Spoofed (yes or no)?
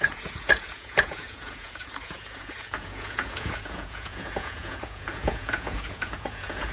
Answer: yes